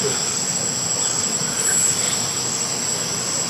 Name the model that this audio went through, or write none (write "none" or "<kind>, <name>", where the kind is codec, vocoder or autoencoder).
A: none